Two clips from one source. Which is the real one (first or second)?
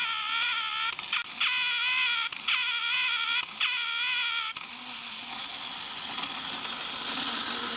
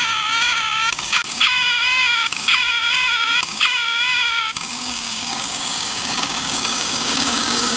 first